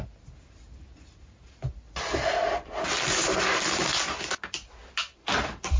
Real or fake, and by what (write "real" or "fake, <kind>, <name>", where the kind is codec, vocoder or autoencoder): real